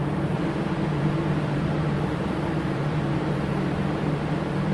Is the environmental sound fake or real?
fake